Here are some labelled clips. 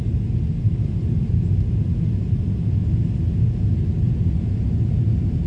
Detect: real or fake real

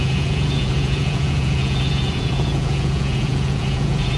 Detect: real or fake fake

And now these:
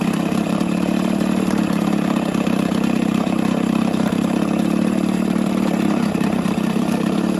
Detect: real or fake fake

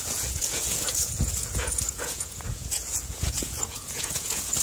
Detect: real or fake fake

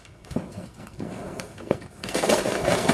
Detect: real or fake fake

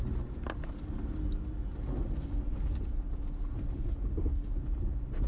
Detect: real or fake real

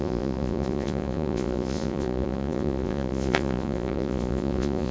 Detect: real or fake fake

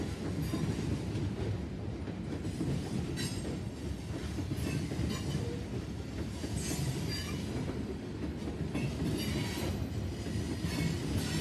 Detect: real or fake real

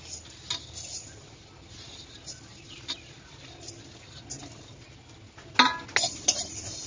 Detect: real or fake real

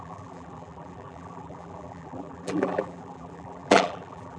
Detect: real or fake fake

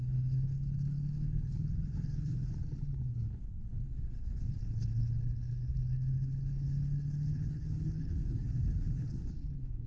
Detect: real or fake fake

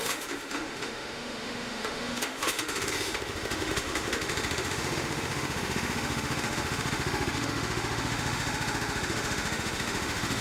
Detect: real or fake fake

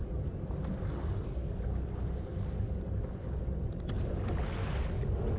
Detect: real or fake real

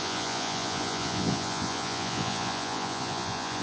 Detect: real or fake fake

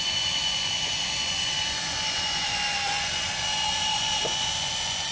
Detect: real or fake fake